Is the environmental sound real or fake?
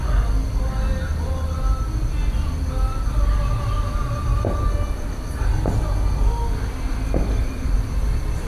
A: real